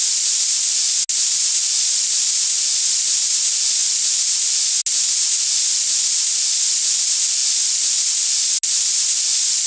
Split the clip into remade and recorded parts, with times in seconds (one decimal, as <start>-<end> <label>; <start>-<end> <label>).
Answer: 0.0-9.7 recorded